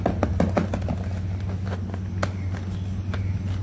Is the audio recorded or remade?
recorded